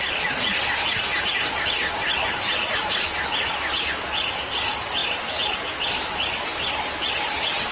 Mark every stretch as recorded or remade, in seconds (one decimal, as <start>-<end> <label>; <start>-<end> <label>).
0.0-7.7 recorded